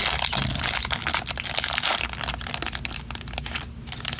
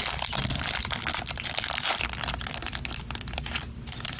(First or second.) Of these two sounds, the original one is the first